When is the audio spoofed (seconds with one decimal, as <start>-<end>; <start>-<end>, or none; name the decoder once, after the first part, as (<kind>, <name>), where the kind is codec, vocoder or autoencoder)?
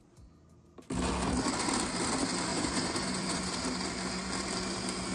2.5-3.5 (vocoder, Vocos)